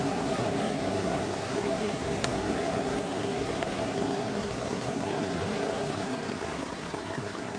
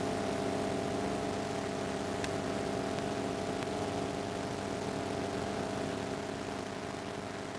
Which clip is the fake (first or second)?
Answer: first